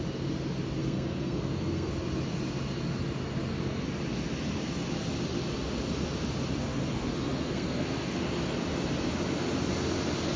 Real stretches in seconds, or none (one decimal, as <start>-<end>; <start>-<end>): 0.0-0.8; 1.9-6.7; 8.2-10.4